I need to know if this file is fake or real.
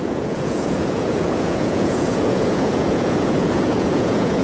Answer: fake